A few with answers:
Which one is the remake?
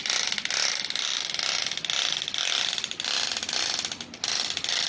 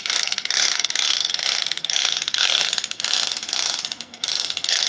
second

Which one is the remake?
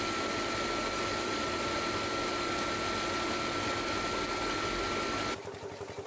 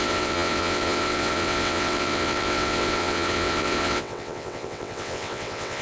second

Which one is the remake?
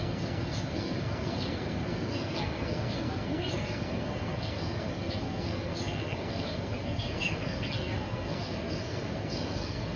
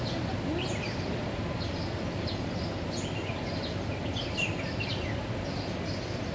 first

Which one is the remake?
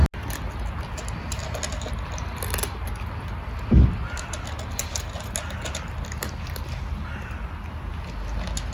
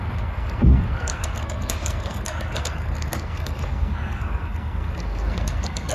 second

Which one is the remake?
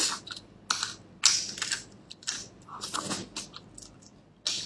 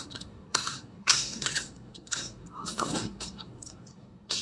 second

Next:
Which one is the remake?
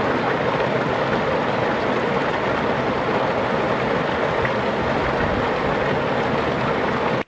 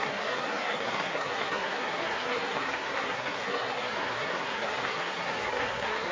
second